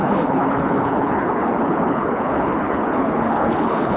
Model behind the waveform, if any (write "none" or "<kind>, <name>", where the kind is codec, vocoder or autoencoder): codec, HILCodec